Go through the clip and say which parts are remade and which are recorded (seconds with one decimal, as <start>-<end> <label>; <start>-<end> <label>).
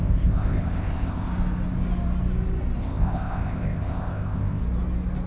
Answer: 0.0-1.3 remade; 1.3-2.8 recorded; 2.8-4.6 remade; 4.6-5.3 recorded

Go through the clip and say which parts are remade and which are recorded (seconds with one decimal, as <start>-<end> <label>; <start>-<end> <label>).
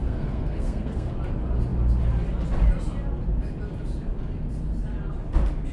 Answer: 0.0-1.1 remade; 1.1-5.7 recorded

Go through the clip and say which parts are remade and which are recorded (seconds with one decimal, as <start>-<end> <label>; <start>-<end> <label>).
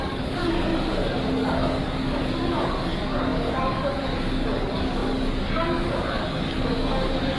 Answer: 0.0-0.7 remade; 0.7-1.3 recorded; 1.3-7.4 remade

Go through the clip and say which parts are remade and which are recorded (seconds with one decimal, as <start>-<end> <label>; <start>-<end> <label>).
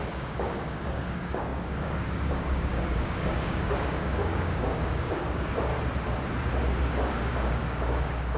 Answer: 0.0-5.7 remade; 5.7-6.8 recorded; 6.8-8.4 remade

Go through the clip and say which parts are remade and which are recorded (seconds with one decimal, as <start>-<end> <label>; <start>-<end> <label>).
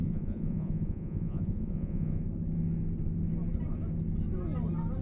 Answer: 0.0-2.2 remade; 2.2-5.0 recorded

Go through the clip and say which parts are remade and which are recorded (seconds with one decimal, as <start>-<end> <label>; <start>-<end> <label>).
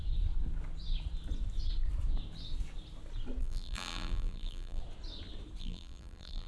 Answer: 0.0-3.4 recorded; 3.4-4.8 remade; 4.8-5.6 recorded; 5.6-6.5 remade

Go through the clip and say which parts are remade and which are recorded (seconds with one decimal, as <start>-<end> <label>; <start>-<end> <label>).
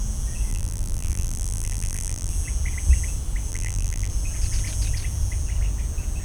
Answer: 0.0-0.5 recorded; 0.5-2.3 remade; 2.3-3.5 recorded; 3.5-4.1 remade; 4.1-6.2 recorded